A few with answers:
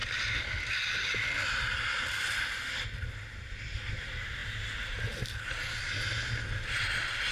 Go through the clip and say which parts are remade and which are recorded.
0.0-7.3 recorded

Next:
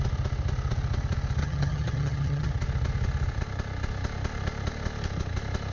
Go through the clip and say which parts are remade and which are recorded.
0.0-1.4 recorded; 1.4-2.5 remade; 2.5-5.7 recorded